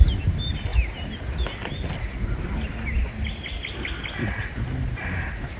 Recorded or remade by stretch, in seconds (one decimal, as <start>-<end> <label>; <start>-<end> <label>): 0.0-5.6 recorded